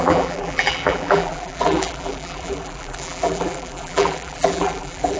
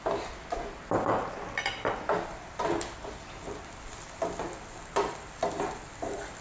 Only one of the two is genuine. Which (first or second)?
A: second